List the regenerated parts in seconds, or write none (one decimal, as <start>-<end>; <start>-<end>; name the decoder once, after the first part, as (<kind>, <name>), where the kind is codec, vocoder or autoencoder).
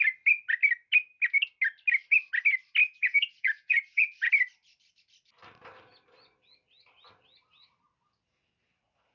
2.8-4.3 (vocoder, Vocos)